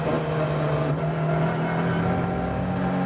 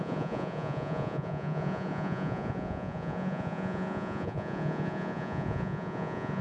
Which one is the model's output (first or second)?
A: second